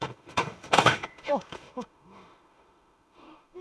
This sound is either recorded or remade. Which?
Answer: remade